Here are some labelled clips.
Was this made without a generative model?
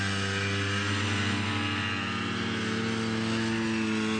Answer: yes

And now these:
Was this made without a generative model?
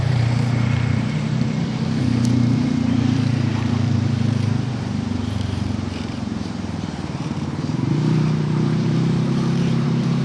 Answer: no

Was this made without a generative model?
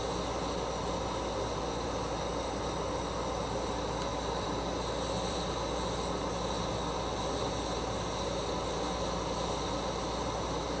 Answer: yes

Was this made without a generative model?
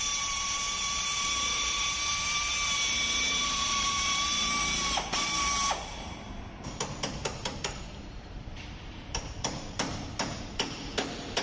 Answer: no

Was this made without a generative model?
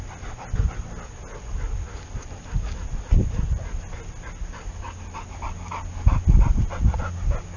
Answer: yes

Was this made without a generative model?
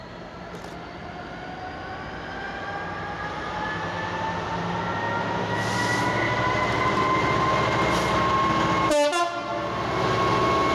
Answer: yes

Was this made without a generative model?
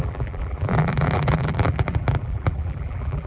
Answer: no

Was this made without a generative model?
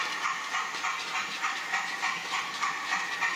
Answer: yes